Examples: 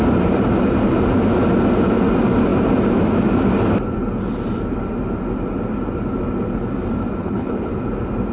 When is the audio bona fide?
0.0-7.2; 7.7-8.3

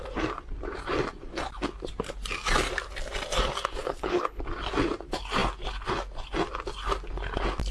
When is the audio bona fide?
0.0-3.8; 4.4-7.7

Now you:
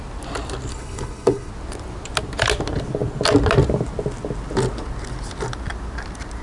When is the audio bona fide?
0.0-0.7; 1.5-6.4

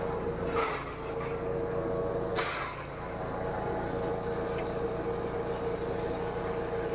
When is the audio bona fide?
0.0-6.9

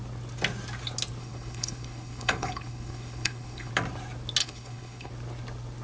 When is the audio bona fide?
0.0-1.2; 3.7-4.4; 5.1-5.8

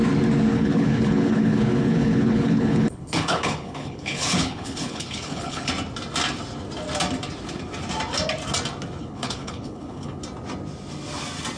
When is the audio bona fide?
0.0-0.5; 5.7-9.0; 10.2-11.6